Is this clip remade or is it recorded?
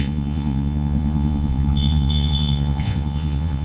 remade